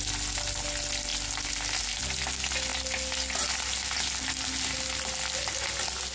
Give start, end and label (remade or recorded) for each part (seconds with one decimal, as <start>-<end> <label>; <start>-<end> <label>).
0.0-6.1 recorded